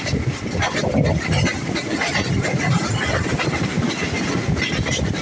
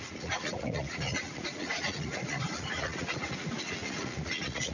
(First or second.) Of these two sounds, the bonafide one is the first